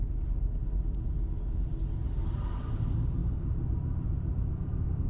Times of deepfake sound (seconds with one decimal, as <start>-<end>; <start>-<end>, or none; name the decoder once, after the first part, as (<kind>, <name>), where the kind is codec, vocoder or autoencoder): none